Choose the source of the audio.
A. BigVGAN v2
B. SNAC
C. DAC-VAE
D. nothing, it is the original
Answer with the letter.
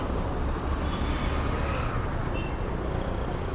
D